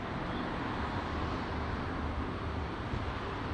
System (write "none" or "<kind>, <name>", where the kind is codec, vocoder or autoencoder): none